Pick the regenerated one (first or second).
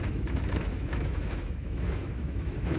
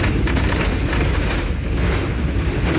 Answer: first